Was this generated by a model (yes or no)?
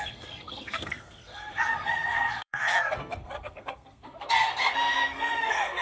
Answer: yes